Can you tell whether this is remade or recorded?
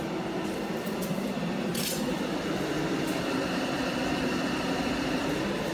recorded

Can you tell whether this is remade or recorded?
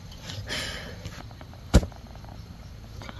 recorded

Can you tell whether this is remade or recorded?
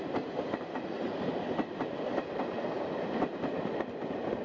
recorded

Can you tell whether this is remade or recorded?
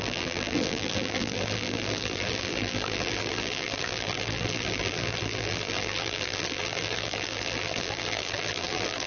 remade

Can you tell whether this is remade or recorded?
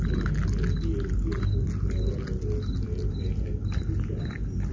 recorded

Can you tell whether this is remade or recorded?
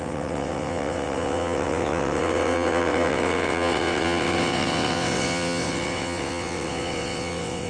remade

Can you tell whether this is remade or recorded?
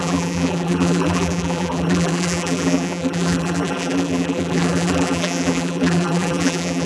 remade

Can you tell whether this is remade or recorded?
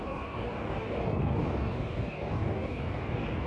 remade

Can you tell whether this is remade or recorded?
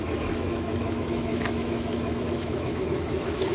remade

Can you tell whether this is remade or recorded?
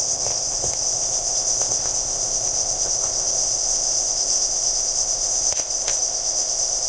remade